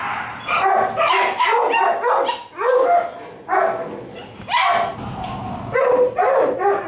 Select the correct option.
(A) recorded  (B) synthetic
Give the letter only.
A